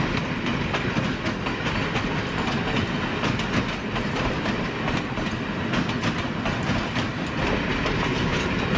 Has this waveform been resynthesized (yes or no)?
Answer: no